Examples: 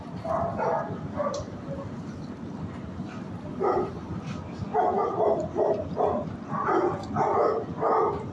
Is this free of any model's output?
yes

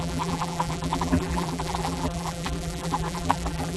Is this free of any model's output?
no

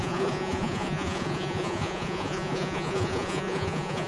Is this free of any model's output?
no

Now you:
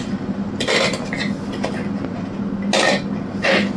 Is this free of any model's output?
yes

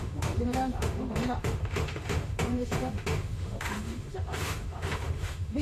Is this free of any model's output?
no